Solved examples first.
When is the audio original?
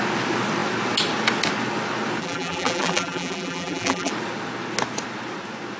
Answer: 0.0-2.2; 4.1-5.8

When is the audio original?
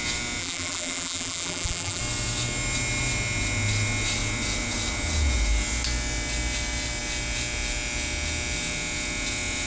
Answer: 0.0-0.4; 2.0-9.7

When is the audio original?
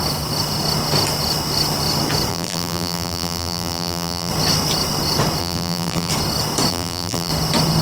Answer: 0.0-2.3; 4.3-5.4; 6.1-6.7; 7.3-7.8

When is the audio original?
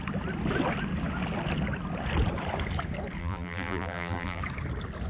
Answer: 0.0-3.2; 4.4-5.1